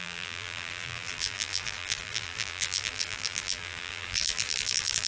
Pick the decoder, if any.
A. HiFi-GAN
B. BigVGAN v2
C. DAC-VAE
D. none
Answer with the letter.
B